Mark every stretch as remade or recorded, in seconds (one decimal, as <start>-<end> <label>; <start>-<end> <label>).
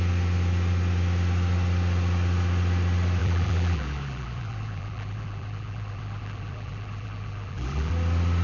0.0-3.2 recorded; 3.2-7.9 remade; 7.9-8.4 recorded